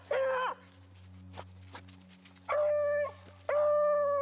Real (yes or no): yes